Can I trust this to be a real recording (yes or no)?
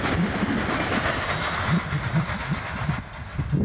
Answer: yes